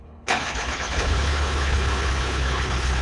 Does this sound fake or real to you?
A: fake